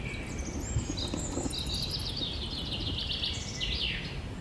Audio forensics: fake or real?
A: real